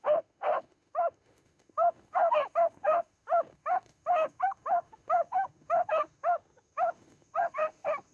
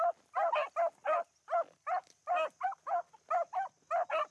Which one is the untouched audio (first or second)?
second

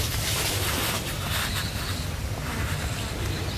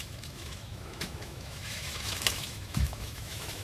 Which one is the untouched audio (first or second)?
first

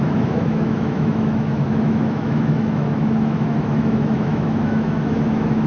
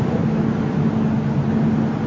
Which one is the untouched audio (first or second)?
second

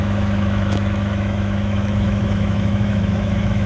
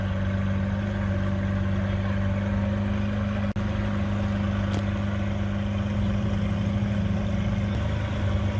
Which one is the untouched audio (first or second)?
second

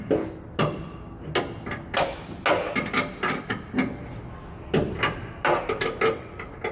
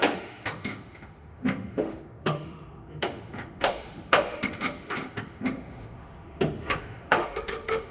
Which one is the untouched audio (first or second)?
first